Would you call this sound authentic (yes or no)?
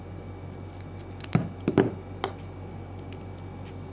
yes